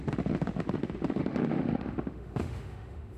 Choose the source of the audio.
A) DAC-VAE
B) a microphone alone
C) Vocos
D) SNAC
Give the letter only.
A